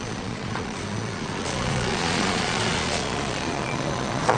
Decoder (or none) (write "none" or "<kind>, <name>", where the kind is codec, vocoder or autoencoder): vocoder, Vocos